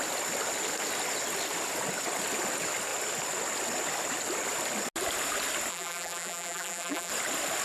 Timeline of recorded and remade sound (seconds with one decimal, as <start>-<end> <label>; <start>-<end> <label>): 0.0-5.7 recorded; 5.7-7.1 remade; 7.1-7.6 recorded